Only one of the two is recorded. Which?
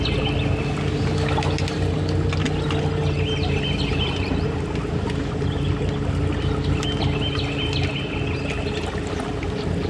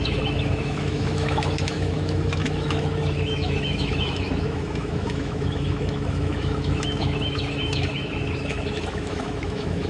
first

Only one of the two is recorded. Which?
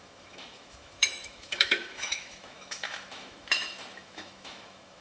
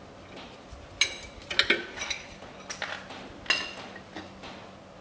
second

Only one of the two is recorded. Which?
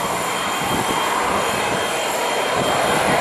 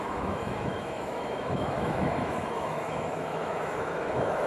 first